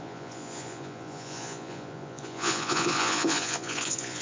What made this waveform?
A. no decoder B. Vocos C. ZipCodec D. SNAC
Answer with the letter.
B